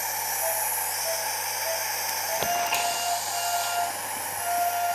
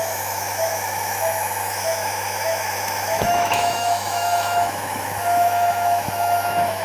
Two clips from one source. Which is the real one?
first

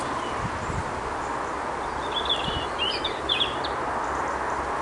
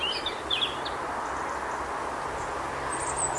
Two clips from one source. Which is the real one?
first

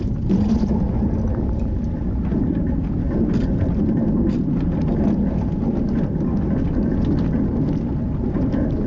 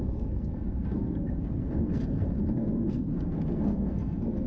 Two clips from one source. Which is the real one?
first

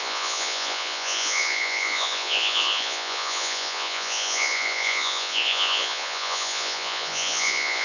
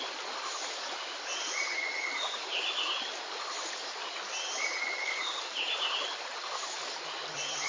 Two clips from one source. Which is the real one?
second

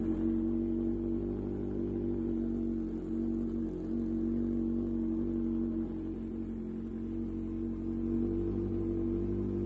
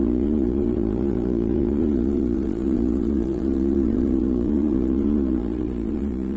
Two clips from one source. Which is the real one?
first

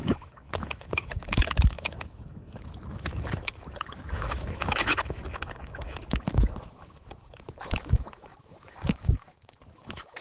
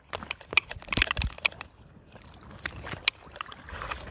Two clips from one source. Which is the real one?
second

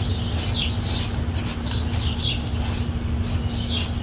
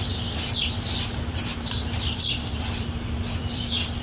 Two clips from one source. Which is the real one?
first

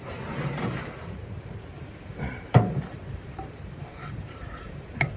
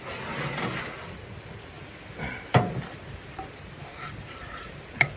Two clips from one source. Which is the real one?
second